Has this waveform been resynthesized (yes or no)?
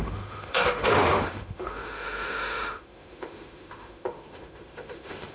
yes